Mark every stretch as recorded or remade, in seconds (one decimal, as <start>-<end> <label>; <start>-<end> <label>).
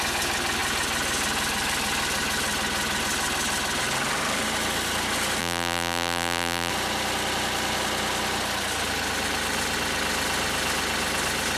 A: 0.0-5.4 recorded; 5.4-6.7 remade; 6.7-11.6 recorded